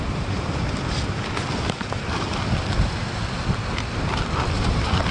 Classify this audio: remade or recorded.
recorded